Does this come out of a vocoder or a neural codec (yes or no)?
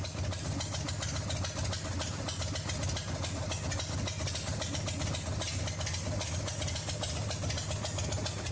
no